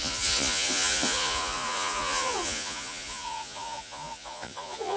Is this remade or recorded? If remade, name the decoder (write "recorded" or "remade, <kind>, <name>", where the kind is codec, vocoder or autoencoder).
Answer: remade, vocoder, Vocos